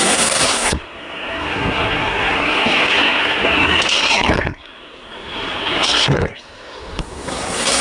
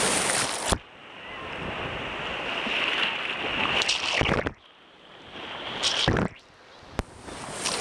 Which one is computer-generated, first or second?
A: first